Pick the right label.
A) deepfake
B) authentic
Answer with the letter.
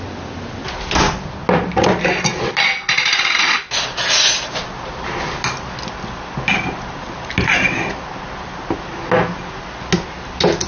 B